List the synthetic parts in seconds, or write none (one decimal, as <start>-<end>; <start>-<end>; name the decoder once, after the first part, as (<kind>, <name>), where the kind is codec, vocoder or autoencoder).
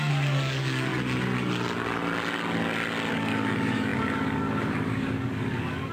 0.0-0.9 (codec, DAC); 3.1-5.9